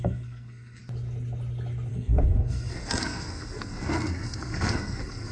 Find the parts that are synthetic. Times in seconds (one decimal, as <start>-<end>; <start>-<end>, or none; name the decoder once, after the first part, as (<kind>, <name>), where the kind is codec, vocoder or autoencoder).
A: 0.0-0.8 (codec, SNAC); 1.9-5.3

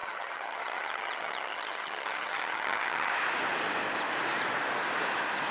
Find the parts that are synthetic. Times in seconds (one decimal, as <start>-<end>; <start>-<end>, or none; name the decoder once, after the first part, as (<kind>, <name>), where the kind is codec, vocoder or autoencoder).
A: 0.0-3.1 (vocoder, HiFi-GAN)